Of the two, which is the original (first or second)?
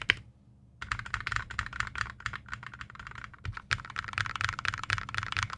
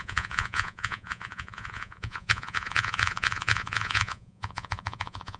first